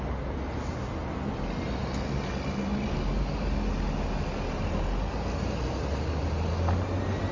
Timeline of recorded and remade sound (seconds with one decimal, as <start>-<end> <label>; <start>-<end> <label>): 0.0-7.3 recorded